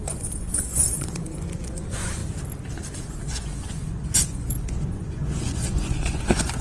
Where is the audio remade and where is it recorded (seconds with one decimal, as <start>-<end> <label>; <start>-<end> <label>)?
0.0-2.2 remade; 2.2-3.0 recorded; 3.0-6.6 remade